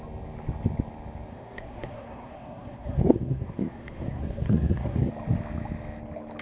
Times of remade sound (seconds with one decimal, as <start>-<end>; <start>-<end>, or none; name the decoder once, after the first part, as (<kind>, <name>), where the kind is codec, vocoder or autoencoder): 1.3-5.1 (codec, SNAC)